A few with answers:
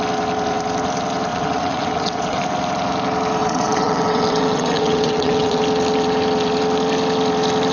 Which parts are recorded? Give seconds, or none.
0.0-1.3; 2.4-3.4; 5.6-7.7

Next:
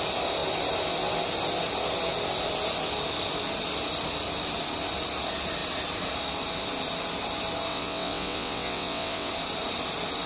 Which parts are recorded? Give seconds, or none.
0.0-7.7; 9.3-10.3

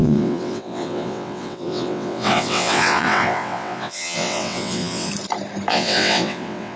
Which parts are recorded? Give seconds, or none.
5.1-5.7

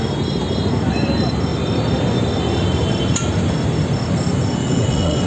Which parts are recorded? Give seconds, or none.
0.0-4.6

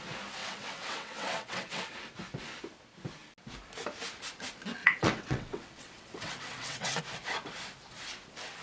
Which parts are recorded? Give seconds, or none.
0.0-0.4; 1.9-4.8; 7.0-8.6

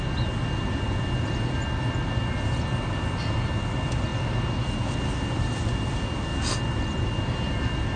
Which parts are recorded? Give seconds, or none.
0.0-8.0

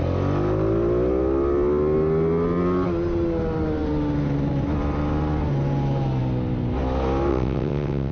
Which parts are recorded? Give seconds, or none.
0.0-7.3

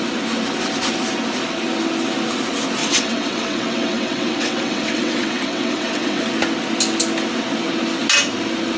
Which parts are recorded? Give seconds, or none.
0.0-2.8; 6.2-8.8